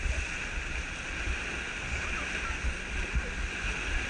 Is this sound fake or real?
real